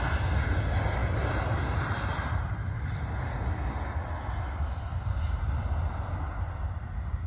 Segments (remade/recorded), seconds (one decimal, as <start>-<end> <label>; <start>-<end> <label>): 0.0-7.3 recorded